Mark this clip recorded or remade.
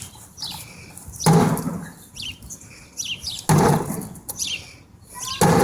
recorded